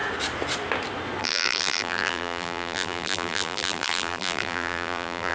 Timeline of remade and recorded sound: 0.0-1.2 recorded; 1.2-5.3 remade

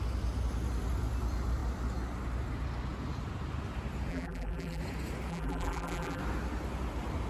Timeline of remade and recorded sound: 0.0-4.1 recorded; 4.1-4.8 remade; 4.8-5.3 recorded; 5.3-6.2 remade; 6.2-7.3 recorded

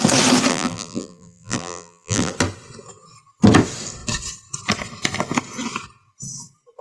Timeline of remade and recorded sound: 0.0-0.5 recorded; 0.5-2.3 remade; 2.3-6.8 recorded

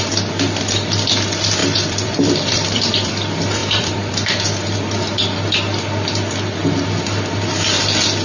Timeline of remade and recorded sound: 0.0-1.6 recorded; 1.6-3.1 remade; 3.1-3.6 recorded; 3.6-4.1 remade; 4.1-8.2 recorded

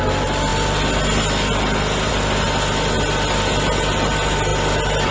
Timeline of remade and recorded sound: 0.0-4.5 recorded; 4.5-5.1 remade

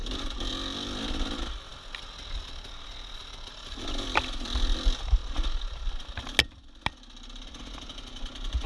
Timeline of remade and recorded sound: 0.0-8.7 recorded

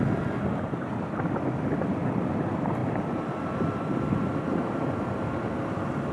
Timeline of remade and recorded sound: 0.0-6.1 recorded